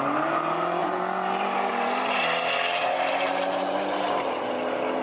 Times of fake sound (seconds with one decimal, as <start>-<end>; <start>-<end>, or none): 0.8-1.7; 2.8-4.4